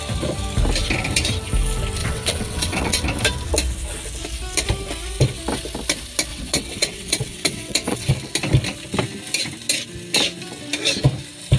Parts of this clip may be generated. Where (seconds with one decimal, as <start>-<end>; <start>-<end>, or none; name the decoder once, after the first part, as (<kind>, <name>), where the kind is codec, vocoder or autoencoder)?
2.0-3.0 (vocoder, WaveNeXt); 6.3-8.1